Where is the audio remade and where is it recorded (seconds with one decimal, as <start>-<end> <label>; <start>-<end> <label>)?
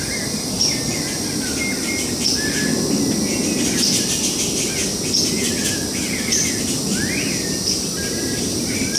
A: 0.0-9.0 recorded